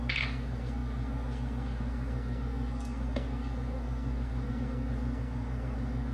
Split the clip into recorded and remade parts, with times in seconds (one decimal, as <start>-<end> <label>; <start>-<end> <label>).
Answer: 0.0-6.1 remade